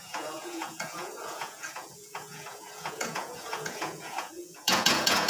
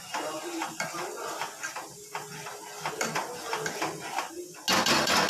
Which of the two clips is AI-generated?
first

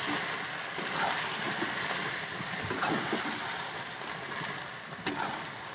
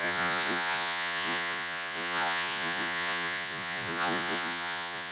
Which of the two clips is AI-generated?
second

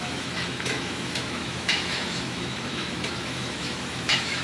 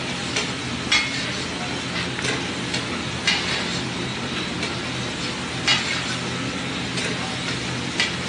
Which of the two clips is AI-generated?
first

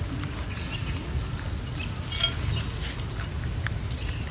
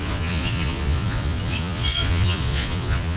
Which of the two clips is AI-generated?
second